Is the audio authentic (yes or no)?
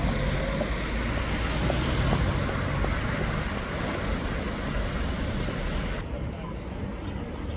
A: yes